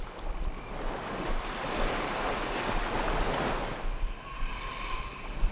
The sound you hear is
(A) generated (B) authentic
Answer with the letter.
B